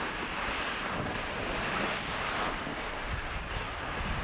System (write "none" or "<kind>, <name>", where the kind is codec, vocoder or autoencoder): none